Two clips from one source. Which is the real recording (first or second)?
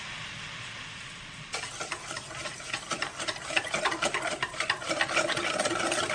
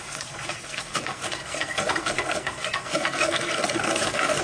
first